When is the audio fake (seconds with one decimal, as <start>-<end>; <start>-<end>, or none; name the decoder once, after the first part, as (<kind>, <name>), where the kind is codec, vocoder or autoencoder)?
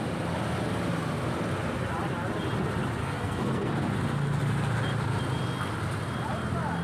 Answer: 3.0-3.7 (codec, SNAC)